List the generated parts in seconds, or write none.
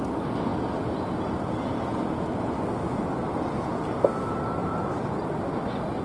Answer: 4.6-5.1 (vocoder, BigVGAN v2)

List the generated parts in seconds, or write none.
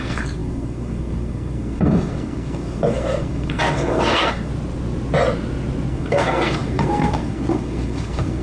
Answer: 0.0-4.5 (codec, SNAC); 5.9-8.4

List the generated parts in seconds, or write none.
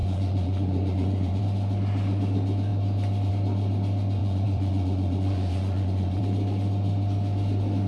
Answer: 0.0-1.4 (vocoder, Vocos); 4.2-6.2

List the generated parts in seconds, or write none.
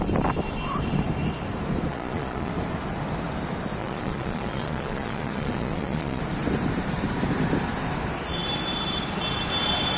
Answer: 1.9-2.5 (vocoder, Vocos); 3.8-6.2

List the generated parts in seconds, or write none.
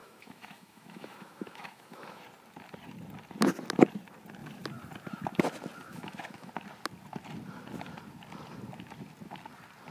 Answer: 0.0-2.2 (autoencoder, DAC-VAE); 5.9-6.5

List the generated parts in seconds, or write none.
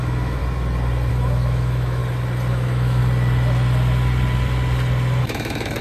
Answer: 0.0-0.4 (autoencoder, DAC-VAE); 1.1-2.0; 2.5-3.0; 5.2-5.8